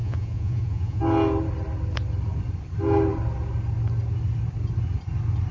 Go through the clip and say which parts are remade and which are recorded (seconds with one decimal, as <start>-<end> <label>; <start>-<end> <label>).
0.0-1.0 remade; 1.0-5.5 recorded